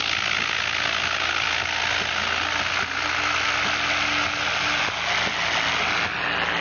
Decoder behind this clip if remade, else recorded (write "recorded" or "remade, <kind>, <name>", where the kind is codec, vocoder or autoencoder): recorded